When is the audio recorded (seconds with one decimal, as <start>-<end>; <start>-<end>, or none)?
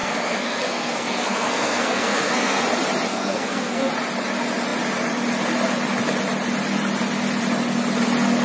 2.6-3.1; 3.9-8.4